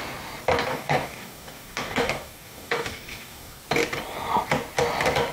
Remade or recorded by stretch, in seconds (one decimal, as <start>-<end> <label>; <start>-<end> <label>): 0.0-0.7 recorded; 0.7-3.6 remade; 3.6-5.3 recorded